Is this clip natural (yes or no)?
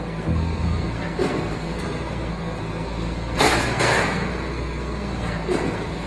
no